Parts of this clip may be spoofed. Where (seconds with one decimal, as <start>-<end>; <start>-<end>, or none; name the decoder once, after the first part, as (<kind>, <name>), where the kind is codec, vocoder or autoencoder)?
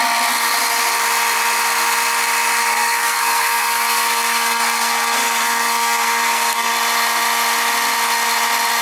2.6-6.7 (codec, SNAC)